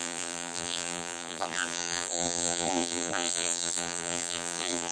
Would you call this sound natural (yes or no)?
no